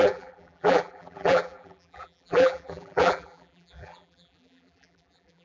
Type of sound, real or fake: fake